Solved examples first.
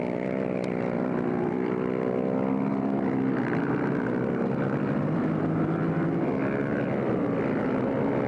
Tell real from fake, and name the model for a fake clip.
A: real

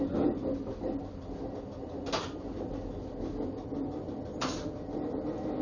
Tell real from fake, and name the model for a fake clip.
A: real